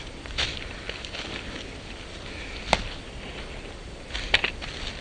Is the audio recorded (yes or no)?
yes